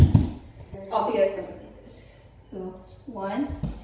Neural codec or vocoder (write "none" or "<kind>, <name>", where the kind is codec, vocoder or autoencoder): none